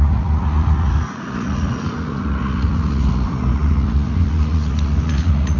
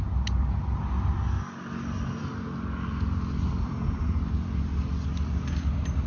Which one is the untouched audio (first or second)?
second